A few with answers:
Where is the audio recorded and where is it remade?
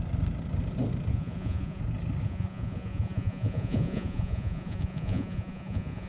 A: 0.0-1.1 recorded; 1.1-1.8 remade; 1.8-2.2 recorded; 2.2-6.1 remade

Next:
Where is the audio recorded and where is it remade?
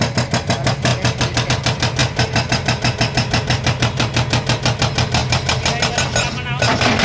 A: 0.0-7.0 recorded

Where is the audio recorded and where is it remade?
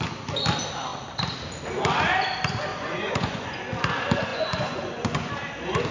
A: 0.0-2.7 recorded; 2.7-3.6 remade; 3.6-4.3 recorded; 4.3-5.3 remade; 5.3-5.9 recorded